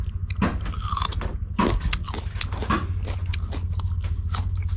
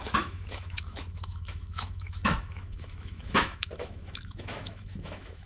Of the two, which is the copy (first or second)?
second